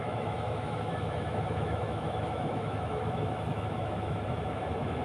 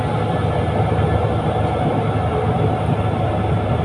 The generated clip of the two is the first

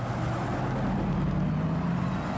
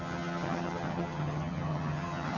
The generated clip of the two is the second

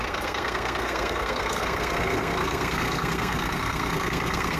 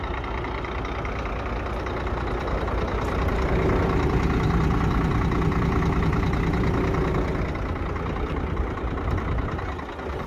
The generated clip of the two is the first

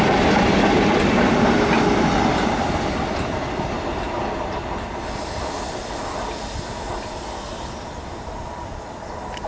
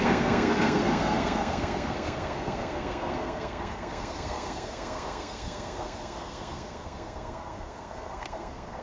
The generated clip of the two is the second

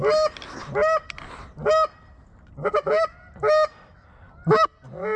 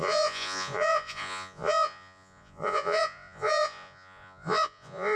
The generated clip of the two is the second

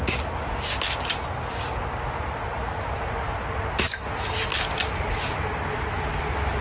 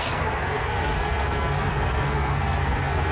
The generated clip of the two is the second